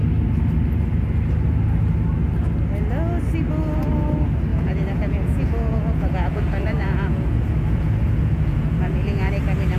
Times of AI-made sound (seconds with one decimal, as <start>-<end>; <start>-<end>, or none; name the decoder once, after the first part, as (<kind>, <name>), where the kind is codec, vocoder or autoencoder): 4.5-9.3 (vocoder, Vocos)